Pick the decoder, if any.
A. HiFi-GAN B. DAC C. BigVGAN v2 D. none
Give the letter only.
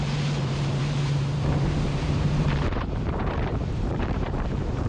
C